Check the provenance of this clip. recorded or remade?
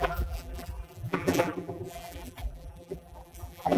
remade